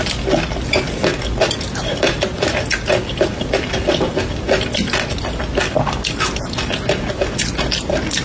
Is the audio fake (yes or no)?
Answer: no